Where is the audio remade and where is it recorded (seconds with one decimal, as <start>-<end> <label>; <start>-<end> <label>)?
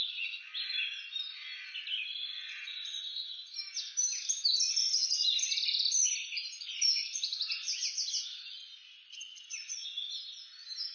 0.0-0.5 remade; 0.5-2.0 recorded; 2.0-3.3 remade; 3.3-8.5 recorded; 8.5-9.8 remade; 9.8-10.9 recorded